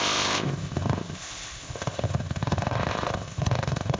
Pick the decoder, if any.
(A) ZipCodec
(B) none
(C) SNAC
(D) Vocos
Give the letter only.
A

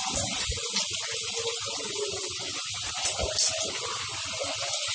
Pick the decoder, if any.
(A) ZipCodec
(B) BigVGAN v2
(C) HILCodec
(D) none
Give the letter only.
D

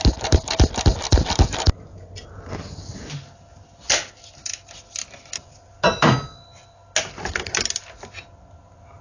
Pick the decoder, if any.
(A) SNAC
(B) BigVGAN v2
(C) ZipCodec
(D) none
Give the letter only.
D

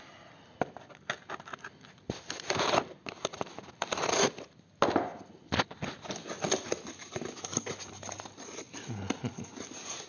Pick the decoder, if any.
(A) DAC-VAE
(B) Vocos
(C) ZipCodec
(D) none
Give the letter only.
D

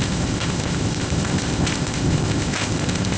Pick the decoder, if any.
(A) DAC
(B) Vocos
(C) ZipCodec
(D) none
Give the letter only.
C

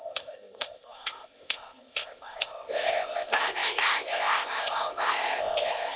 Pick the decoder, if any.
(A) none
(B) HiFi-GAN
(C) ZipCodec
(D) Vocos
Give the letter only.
C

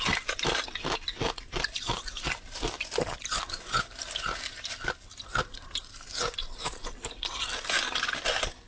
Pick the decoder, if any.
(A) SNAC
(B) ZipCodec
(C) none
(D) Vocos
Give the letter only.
C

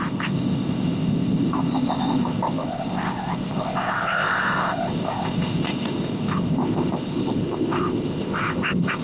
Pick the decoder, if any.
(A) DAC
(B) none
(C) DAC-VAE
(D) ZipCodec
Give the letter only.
D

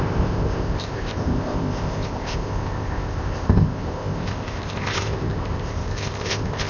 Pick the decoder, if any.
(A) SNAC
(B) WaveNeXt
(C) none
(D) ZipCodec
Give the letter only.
D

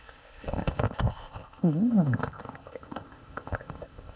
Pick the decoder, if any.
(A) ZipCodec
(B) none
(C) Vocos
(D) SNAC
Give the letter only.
A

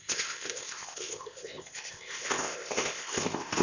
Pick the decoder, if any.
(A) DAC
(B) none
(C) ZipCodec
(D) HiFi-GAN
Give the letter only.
C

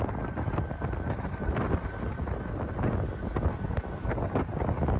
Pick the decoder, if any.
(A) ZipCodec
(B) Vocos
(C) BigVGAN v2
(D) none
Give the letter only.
D